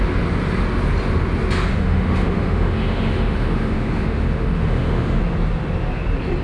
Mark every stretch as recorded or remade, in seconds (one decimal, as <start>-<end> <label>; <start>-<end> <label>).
0.0-1.7 recorded; 1.7-5.2 remade; 5.2-6.4 recorded